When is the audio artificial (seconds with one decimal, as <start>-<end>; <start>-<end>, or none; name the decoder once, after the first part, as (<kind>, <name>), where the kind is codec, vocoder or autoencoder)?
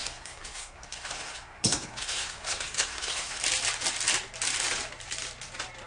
0.0-3.4 (codec, SNAC)